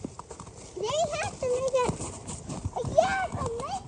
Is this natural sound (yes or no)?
yes